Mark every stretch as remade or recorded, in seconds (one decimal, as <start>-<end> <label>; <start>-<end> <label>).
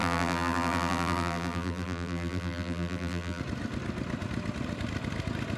0.0-3.4 remade; 3.4-5.6 recorded